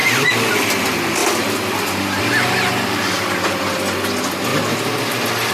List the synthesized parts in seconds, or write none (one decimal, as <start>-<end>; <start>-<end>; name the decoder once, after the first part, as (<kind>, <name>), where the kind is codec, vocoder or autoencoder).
none